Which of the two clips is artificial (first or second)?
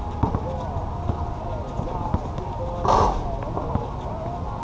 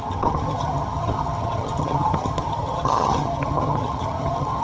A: second